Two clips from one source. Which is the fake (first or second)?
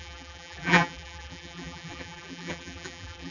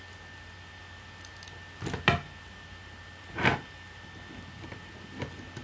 first